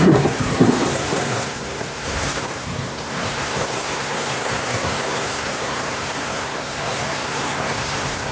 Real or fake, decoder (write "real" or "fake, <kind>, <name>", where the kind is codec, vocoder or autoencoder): fake, codec, SNAC